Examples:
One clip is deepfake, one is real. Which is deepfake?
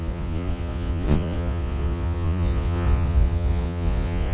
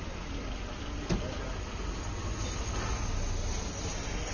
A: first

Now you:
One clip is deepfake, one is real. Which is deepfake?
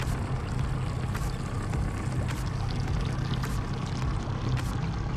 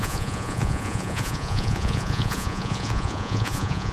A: second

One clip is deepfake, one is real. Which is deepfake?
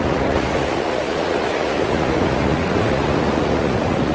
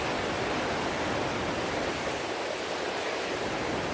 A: first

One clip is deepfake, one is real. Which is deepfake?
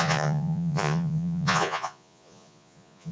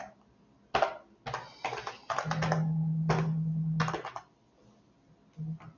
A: first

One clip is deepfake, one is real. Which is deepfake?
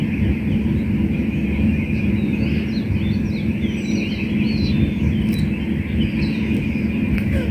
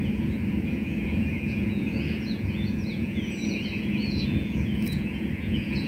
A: second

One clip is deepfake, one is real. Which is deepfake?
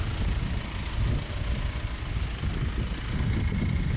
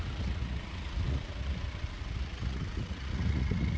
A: second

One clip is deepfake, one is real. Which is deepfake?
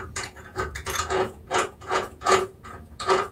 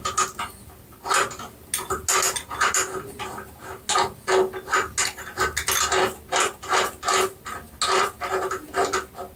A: first